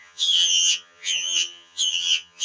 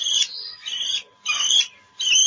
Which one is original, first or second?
second